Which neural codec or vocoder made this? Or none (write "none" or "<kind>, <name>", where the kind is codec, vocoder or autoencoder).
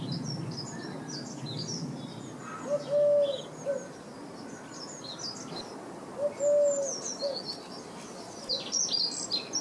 none